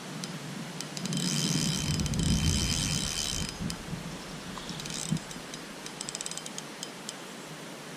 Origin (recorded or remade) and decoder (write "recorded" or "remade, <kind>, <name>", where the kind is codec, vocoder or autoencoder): recorded